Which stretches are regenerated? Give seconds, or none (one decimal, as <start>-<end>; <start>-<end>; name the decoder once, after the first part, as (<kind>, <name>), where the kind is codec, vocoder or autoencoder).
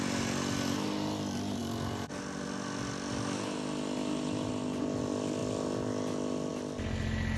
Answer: none